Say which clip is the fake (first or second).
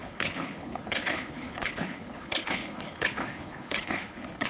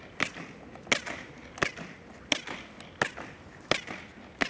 first